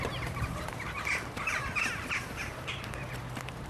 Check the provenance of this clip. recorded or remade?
remade